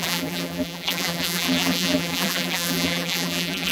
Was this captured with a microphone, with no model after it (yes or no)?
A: no